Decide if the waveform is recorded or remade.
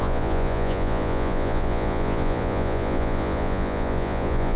remade